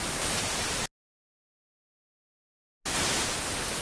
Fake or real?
real